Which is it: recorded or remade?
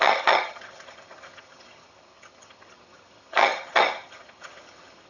remade